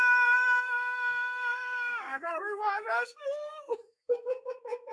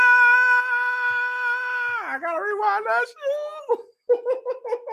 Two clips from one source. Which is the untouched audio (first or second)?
second